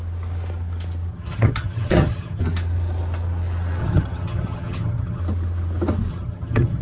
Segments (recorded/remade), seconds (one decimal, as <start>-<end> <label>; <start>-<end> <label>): 0.0-1.1 recorded; 1.1-2.4 remade; 2.4-3.8 recorded; 3.8-5.2 remade; 5.2-6.1 recorded; 6.1-6.8 remade